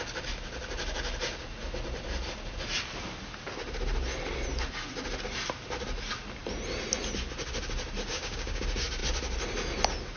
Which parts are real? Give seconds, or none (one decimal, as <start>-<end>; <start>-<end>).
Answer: 0.0-8.1; 8.6-10.2